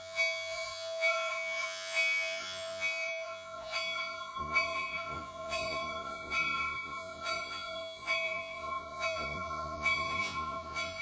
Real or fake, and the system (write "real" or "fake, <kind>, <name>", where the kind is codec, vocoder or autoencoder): fake, vocoder, Vocos